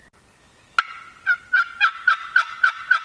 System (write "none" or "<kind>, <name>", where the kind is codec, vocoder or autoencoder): none